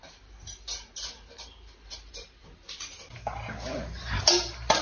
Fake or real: real